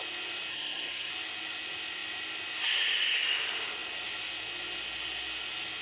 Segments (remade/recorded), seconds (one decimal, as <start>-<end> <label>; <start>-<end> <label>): 0.0-0.5 recorded; 0.5-1.1 remade; 1.1-5.8 recorded